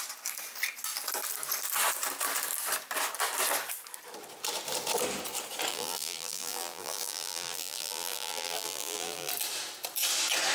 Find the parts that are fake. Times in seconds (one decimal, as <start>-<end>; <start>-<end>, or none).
5.7-9.3